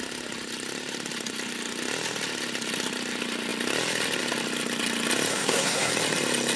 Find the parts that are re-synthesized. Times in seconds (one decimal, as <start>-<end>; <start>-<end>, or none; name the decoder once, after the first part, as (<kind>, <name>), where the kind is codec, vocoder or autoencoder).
5.3-5.9 (codec, SNAC)